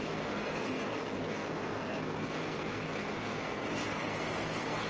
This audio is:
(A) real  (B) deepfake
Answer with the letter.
B